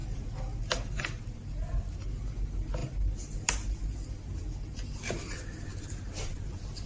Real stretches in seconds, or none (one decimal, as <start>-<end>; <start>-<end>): 0.0-2.8; 4.1-6.9